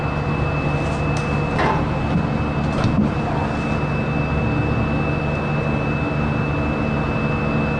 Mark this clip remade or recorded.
recorded